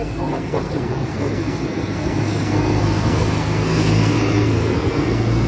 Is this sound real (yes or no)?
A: no